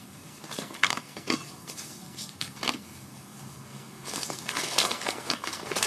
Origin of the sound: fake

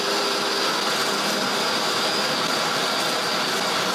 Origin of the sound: real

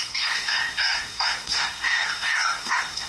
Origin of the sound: fake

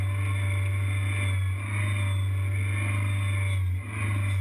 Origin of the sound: real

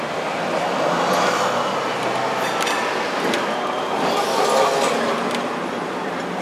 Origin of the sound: real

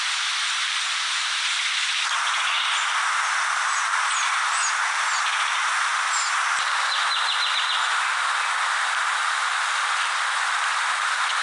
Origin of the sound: real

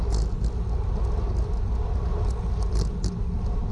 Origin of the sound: real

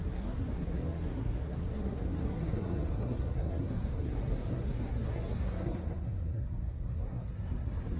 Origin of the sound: fake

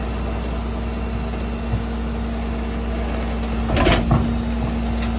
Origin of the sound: real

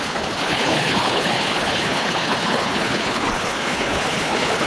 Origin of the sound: fake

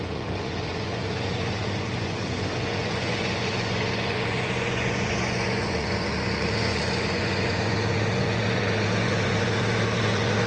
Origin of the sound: fake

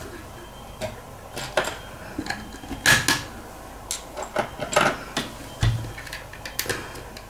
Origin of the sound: real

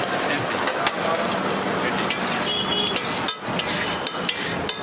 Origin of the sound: real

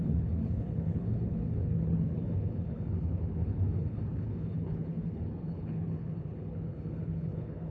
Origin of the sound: fake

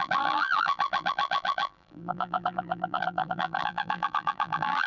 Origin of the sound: fake